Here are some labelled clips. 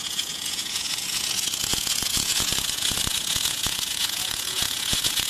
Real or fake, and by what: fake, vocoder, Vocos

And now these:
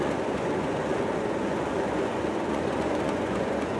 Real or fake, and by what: fake, vocoder, Vocos